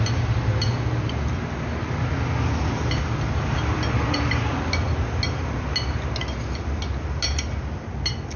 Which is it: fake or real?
real